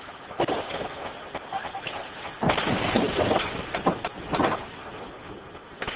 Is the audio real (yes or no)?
yes